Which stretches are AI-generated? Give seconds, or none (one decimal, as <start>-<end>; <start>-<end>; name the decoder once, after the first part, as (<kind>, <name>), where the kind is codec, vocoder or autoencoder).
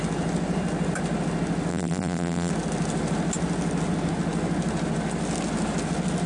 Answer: 1.7-2.5 (vocoder, BigVGAN v2)